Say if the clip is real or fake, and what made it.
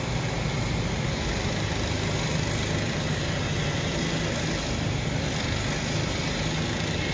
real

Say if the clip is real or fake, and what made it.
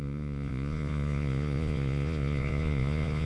fake, vocoder, Vocos